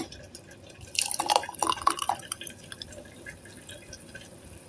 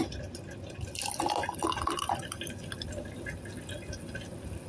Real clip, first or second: second